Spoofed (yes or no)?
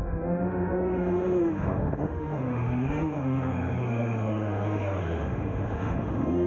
yes